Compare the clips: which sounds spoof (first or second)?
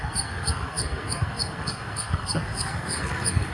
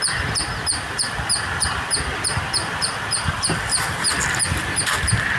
first